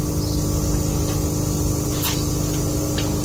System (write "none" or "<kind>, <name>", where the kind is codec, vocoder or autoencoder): none